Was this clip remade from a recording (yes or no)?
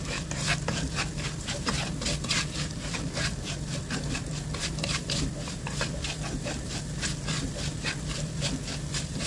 yes